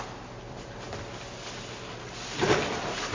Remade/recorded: recorded